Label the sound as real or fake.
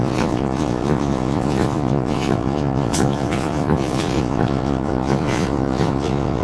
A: fake